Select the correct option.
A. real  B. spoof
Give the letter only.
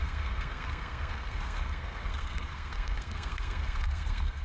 B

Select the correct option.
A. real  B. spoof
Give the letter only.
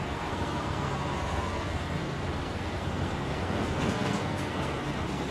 B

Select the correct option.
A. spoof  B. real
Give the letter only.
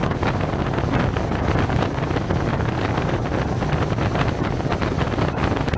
B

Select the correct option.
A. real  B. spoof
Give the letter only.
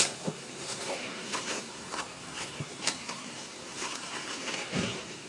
B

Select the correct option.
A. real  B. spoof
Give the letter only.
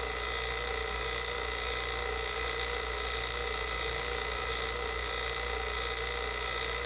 A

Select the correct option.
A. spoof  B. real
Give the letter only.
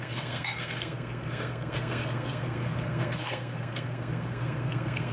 A